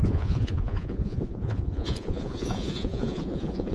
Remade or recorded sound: remade